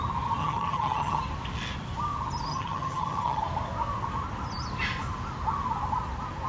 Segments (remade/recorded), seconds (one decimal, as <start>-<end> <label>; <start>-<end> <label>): 0.0-0.4 recorded; 0.4-1.2 remade; 1.2-2.5 recorded; 2.5-3.4 remade; 3.4-6.5 recorded